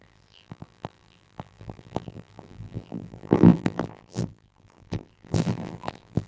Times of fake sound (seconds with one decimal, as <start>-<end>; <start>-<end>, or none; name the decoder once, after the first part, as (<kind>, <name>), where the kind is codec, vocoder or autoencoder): 0.0-6.3 (vocoder, BigVGAN v2)